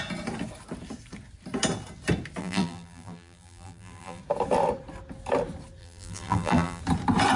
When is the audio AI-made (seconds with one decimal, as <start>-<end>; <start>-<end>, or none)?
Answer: 2.4-4.2; 5.8-6.8